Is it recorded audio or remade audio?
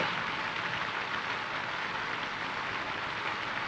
recorded